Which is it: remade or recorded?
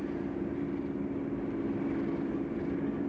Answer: recorded